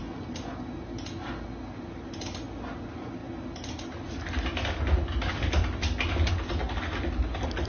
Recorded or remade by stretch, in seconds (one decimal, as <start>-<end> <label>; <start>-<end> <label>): 0.0-7.7 recorded